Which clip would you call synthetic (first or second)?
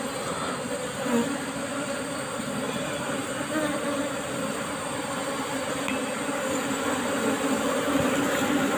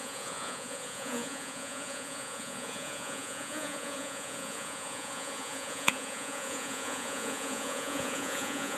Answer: second